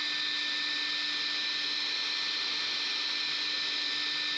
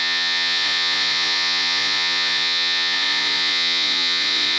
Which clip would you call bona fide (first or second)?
first